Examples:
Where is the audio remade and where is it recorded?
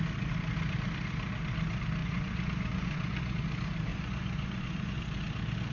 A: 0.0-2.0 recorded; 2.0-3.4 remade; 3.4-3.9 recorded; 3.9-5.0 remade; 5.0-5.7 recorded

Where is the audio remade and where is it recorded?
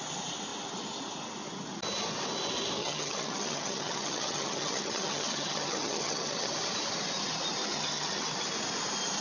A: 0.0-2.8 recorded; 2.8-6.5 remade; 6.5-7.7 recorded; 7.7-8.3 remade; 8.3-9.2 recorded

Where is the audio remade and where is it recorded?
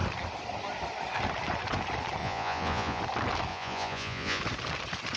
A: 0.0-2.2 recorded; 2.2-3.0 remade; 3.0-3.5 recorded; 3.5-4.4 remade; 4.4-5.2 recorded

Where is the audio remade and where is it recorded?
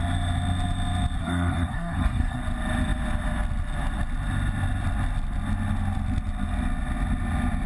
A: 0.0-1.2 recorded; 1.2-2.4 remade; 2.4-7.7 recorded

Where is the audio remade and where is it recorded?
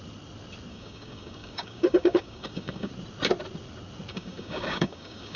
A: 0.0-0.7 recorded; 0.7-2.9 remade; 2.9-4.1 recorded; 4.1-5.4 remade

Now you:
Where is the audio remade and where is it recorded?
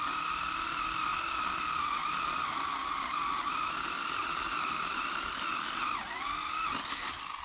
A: 0.0-7.4 recorded